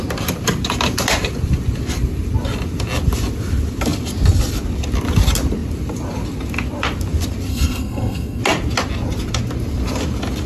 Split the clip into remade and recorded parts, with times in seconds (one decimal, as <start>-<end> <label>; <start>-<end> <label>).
0.0-7.5 recorded; 7.5-8.4 remade; 8.4-10.5 recorded